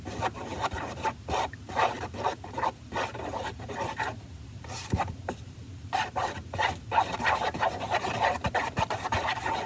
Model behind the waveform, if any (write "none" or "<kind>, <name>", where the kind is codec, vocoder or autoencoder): vocoder, BigVGAN v2